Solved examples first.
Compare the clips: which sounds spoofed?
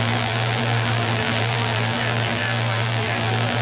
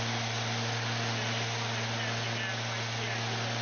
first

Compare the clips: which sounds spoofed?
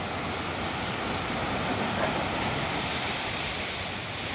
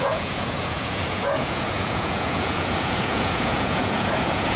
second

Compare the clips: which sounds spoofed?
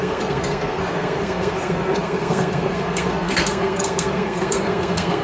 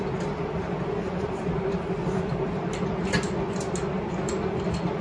first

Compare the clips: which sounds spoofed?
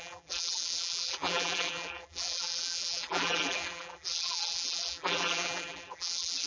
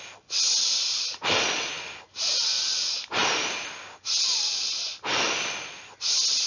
first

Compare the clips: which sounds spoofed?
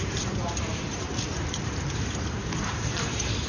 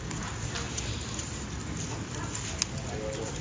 first